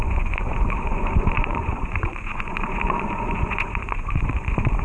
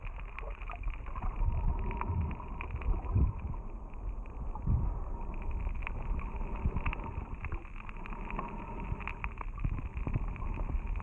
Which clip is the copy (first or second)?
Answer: first